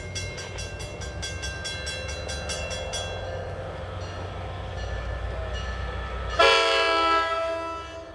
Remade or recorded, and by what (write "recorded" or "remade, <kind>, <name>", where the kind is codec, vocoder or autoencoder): recorded